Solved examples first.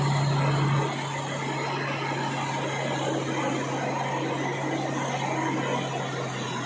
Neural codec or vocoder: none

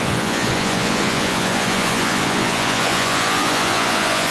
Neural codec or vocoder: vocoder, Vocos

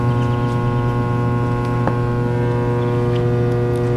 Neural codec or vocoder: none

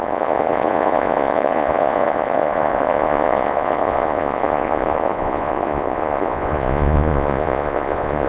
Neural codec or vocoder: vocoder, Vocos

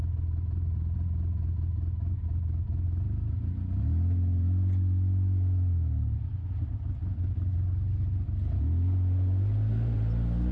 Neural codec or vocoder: none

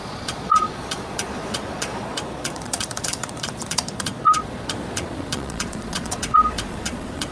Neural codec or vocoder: vocoder, Vocos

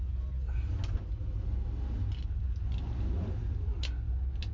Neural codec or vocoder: none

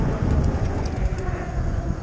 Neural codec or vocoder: vocoder, Vocos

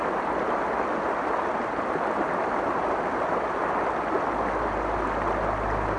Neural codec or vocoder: none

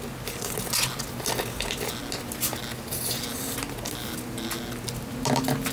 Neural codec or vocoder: none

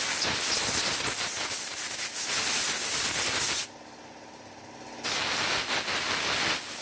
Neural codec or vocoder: none